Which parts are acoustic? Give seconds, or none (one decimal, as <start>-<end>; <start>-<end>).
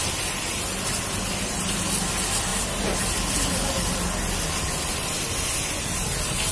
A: 0.0-6.5